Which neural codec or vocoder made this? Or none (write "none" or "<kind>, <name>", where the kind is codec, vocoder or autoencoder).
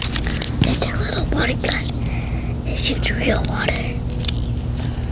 none